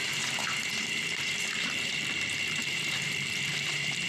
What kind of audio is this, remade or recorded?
remade